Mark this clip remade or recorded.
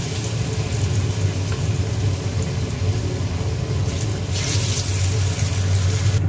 recorded